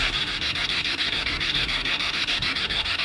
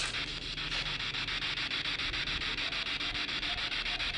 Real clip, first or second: second